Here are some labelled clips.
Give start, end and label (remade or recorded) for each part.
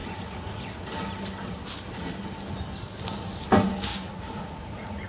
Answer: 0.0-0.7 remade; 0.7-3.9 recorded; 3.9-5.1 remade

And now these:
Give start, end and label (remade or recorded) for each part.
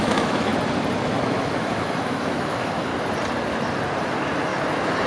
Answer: 0.0-0.5 remade; 0.5-1.0 recorded; 1.0-2.9 remade; 2.9-4.0 recorded; 4.0-4.5 remade; 4.5-5.1 recorded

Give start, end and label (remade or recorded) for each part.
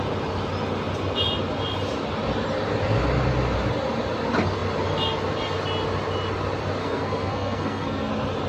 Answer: 0.0-6.8 recorded; 6.8-8.1 remade; 8.1-8.5 recorded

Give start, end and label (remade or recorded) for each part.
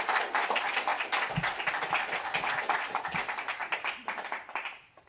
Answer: 0.0-5.1 recorded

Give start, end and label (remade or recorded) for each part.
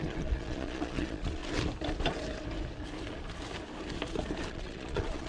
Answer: 0.0-1.4 remade; 1.4-4.5 recorded; 4.5-5.3 remade